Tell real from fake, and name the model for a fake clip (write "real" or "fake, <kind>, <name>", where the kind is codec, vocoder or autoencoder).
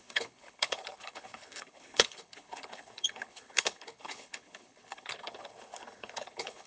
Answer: fake, codec, HILCodec